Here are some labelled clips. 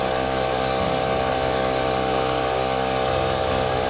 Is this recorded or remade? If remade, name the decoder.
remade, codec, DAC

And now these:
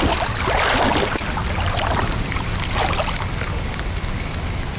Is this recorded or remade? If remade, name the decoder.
recorded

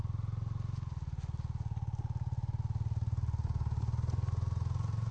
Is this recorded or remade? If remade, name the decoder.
recorded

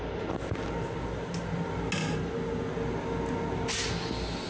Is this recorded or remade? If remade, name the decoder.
recorded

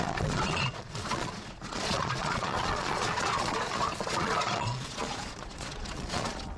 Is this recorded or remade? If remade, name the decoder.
remade, vocoder, Vocos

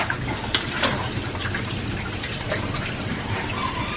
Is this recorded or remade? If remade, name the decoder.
recorded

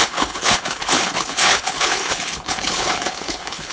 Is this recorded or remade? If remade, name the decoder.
remade, codec, HILCodec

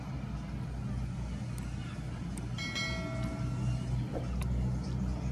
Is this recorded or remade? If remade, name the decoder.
recorded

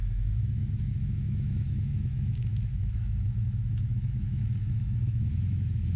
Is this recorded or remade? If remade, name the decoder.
remade, autoencoder, DAC-VAE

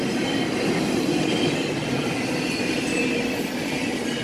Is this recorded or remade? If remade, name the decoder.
recorded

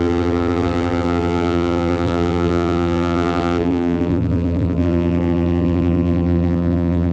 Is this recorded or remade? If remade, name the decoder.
remade, vocoder, BigVGAN v2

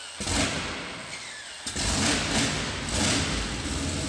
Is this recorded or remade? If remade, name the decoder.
recorded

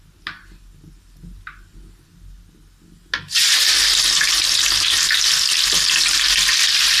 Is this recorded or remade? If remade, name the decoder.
recorded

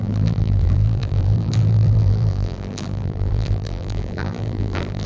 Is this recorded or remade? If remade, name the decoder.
remade, vocoder, BigVGAN v2